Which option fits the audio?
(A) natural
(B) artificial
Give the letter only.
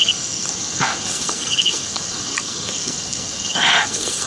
B